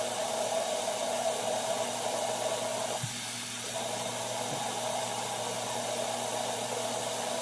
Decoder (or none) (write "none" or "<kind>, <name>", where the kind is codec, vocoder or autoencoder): none